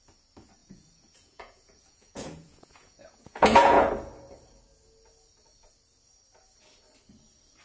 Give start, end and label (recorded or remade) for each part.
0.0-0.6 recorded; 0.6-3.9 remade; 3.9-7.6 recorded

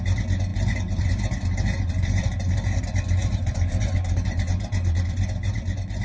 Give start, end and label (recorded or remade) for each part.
0.0-0.5 recorded; 0.5-2.8 remade; 2.8-3.2 recorded; 3.2-6.0 remade

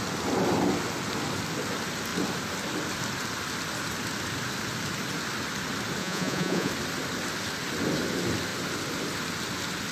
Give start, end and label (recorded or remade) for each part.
0.0-6.0 recorded; 6.0-6.7 remade; 6.7-9.9 recorded

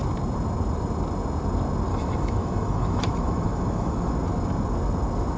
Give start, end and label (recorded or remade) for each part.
0.0-1.9 recorded; 1.9-4.1 remade; 4.1-5.4 recorded

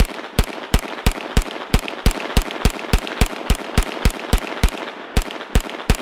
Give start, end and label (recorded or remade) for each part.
0.0-6.0 remade